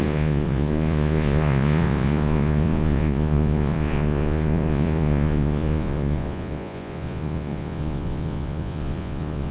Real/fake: fake